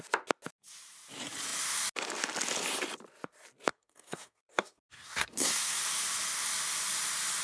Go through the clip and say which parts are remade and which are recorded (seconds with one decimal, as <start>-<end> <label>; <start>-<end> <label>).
0.0-3.7 recorded; 3.7-5.8 remade; 5.8-7.4 recorded